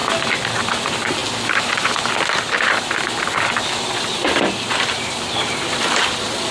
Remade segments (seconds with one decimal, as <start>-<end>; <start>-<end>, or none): none